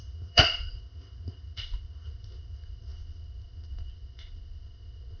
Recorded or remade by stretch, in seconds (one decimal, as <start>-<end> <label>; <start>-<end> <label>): 0.0-5.2 remade